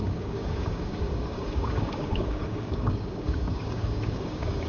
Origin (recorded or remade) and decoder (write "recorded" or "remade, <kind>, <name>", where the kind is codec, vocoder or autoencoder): remade, codec, DAC